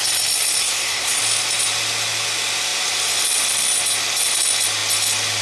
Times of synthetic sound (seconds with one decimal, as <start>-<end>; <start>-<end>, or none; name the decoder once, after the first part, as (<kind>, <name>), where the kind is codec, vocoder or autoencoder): 0.6-1.2 (codec, SNAC)